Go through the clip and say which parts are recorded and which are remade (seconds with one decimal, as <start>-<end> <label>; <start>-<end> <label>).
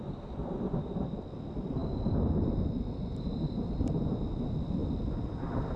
0.0-5.8 recorded